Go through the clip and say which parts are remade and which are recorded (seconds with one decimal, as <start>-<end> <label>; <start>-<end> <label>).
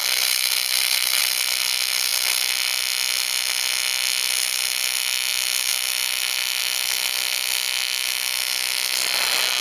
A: 0.0-1.2 remade; 1.2-9.6 recorded